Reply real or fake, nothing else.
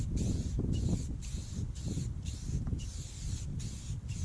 real